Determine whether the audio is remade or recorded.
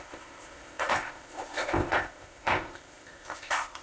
remade